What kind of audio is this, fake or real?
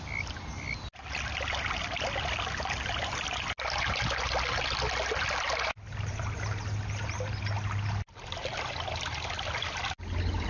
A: real